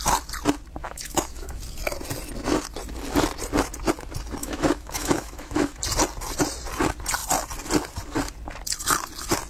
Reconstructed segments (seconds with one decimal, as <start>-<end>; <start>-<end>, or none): 0.8-1.6; 4.4-5.8